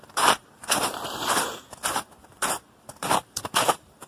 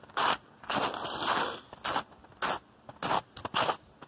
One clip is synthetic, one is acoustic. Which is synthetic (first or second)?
first